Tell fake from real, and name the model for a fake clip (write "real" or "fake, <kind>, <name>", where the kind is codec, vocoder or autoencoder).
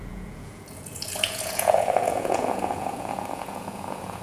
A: fake, vocoder, Vocos